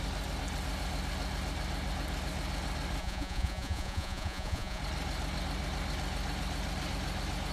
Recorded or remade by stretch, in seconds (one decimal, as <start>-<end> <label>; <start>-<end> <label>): 0.0-3.0 recorded; 3.0-4.8 remade; 4.8-7.5 recorded